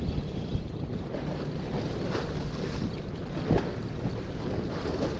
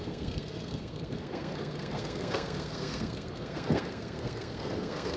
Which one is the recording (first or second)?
first